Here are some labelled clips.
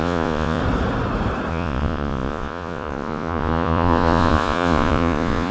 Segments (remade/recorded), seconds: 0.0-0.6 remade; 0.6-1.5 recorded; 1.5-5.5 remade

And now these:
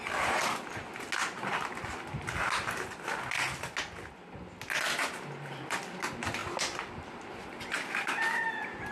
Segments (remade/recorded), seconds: 0.0-8.9 recorded

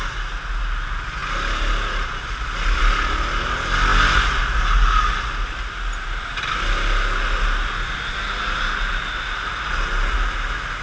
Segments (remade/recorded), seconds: 0.0-10.8 recorded

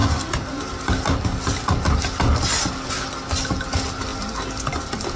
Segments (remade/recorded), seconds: 0.0-5.2 recorded